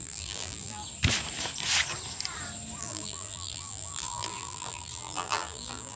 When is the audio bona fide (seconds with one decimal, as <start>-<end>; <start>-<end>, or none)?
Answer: 0.8-2.8